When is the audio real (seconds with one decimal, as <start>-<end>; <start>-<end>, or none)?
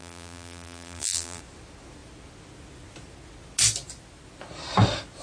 1.4-5.2